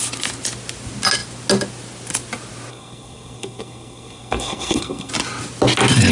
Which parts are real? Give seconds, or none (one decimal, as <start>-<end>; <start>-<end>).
0.0-2.7; 5.1-6.1